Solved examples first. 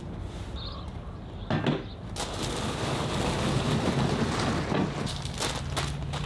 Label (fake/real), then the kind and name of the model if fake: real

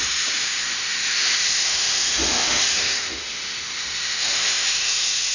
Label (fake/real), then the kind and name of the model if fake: fake, autoencoder, DAC-VAE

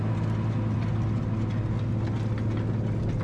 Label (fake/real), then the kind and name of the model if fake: real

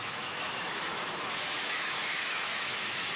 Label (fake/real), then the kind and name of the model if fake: fake, autoencoder, DAC-VAE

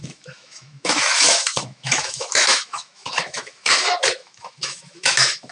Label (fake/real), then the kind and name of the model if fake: fake, autoencoder, DAC-VAE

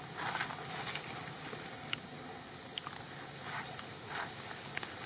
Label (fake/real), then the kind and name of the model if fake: real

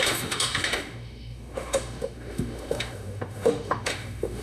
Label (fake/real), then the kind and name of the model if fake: fake, autoencoder, DAC-VAE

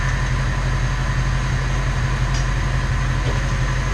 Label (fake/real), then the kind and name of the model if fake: real